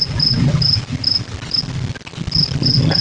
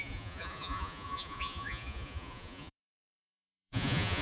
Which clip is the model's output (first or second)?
second